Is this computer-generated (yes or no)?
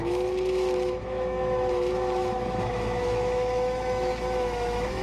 yes